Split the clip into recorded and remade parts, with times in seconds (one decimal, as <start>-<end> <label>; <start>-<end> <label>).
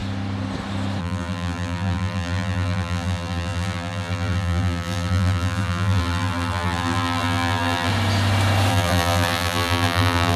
0.0-1.0 recorded; 1.0-7.9 remade; 7.9-8.7 recorded; 8.7-10.4 remade